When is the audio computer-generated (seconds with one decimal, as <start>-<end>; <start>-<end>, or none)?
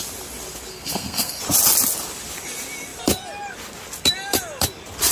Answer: 0.7-1.4